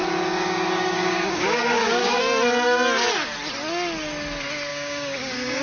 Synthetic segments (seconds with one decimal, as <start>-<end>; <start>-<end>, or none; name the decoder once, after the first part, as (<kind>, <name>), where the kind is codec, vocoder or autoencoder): 0.0-2.2 (codec, DAC); 4.7-5.6